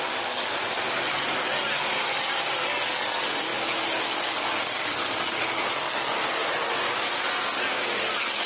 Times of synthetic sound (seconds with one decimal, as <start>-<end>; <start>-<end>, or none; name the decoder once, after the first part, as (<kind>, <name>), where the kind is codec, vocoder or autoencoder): none